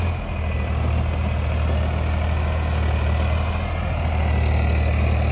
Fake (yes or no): no